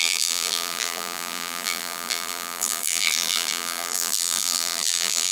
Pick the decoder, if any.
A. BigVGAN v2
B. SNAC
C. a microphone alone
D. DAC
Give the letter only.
A